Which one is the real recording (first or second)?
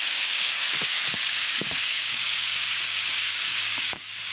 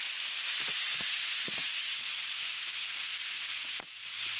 second